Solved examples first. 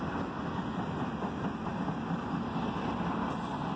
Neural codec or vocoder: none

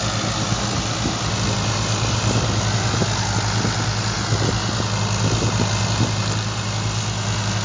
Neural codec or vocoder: none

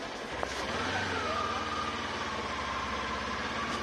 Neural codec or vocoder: none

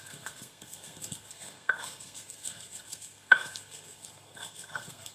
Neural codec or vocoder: codec, SNAC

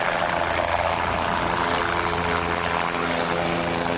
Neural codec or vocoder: none